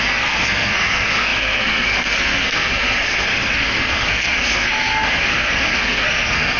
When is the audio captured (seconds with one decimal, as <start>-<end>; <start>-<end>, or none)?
none